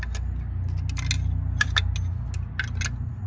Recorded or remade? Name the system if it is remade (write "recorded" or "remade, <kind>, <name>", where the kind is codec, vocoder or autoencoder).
recorded